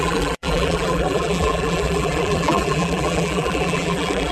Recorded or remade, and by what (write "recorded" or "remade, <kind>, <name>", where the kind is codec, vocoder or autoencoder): remade, vocoder, BigVGAN v2